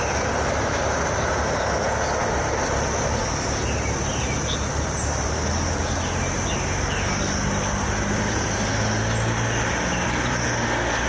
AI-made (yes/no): no